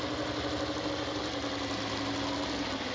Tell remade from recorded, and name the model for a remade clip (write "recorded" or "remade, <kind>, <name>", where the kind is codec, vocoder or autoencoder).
recorded